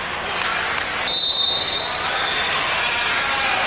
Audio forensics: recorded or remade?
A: recorded